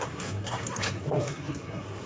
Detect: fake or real fake